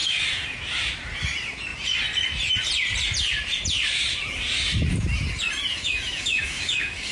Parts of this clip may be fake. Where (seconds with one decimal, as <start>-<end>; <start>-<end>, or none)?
5.7-7.1